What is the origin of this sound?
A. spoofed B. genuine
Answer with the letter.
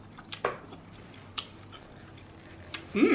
B